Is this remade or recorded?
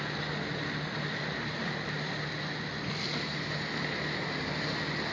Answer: recorded